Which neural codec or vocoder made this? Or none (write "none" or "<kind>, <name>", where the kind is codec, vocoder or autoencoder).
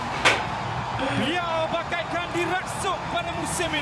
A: vocoder, BigVGAN v2